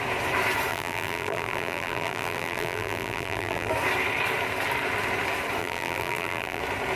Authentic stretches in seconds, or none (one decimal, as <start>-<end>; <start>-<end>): 0.0-0.7; 3.7-5.6; 6.6-7.0